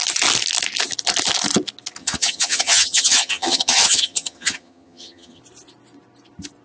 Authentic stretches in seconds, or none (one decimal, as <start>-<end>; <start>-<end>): 0.0-2.0; 5.4-6.6